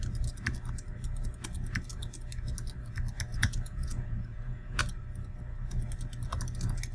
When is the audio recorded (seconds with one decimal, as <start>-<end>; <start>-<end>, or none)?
0.0-3.3; 4.8-6.9